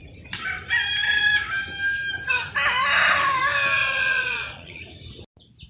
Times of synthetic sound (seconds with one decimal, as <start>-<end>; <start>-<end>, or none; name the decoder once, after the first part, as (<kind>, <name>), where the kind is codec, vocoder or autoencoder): 3.8-4.8 (vocoder, Vocos)

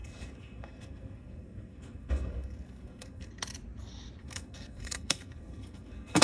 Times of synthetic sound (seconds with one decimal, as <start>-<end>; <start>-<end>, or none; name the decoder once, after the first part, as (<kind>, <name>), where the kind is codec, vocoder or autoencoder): 0.0-3.3 (codec, SNAC); 4.2-6.2

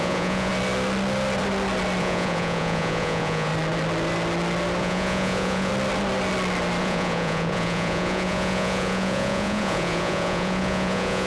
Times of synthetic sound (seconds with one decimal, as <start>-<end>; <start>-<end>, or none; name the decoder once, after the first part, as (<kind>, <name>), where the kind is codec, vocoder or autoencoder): 0.0-0.5 (vocoder, Vocos); 2.0-3.5; 4.8-5.7; 6.8-11.3

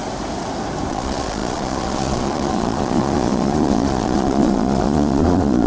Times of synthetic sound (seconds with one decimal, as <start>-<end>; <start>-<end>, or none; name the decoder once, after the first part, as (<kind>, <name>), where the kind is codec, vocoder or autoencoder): 0.9-5.7 (vocoder, Vocos)

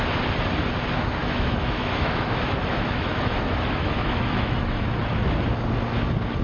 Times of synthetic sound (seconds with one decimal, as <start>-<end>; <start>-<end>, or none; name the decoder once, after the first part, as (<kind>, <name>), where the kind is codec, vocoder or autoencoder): 1.2-5.0 (autoencoder, DAC-VAE)

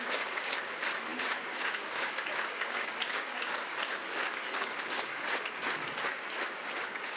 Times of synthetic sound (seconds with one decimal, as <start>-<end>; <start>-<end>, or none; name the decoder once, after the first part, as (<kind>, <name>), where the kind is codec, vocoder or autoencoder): 0.0-7.2 (codec, DAC)

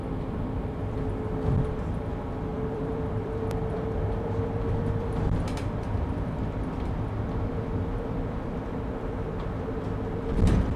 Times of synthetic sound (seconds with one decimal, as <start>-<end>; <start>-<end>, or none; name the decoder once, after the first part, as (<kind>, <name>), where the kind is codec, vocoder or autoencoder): 2.5-6.3 (vocoder, BigVGAN v2); 7.8-9.8